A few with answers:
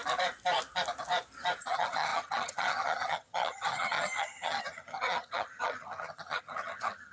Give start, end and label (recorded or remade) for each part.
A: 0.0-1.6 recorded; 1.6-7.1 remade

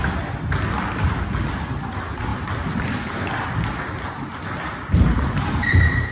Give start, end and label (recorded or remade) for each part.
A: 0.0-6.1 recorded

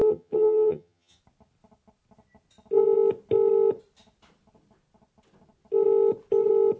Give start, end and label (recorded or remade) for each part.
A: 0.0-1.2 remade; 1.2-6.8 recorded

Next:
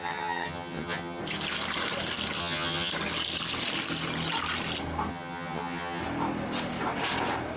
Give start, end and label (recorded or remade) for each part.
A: 0.0-1.2 remade; 1.2-2.4 recorded; 2.4-2.9 remade; 2.9-5.1 recorded; 5.1-6.0 remade; 6.0-7.6 recorded